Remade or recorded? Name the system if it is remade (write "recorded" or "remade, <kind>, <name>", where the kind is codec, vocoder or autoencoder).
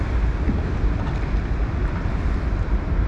recorded